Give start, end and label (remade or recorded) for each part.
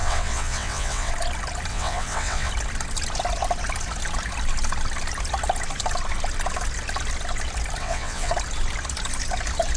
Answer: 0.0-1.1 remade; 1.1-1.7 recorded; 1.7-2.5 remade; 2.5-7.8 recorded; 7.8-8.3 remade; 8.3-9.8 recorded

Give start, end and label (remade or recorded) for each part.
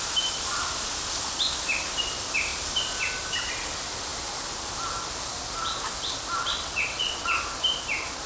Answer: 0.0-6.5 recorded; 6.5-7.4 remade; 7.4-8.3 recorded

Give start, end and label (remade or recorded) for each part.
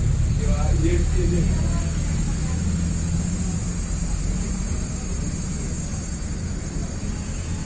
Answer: 0.0-7.6 recorded